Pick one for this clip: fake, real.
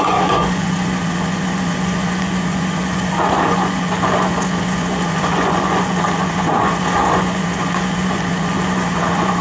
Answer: fake